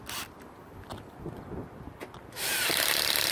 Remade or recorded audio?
recorded